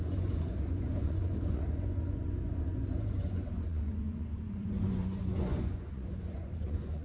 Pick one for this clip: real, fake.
fake